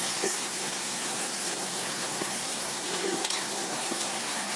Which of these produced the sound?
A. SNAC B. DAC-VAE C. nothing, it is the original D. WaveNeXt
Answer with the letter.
A